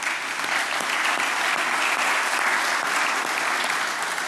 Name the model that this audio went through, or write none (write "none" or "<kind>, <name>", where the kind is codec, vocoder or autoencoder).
none